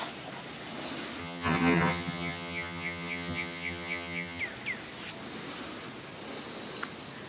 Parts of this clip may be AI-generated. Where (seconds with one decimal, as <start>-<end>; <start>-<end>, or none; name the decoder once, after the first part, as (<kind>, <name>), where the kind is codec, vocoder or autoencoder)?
1.2-4.4 (vocoder, HiFi-GAN)